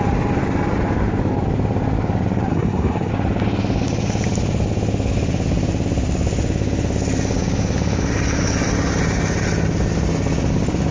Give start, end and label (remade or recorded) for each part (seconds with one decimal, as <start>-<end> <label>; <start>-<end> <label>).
0.0-2.5 recorded; 2.5-3.1 remade; 3.1-10.9 recorded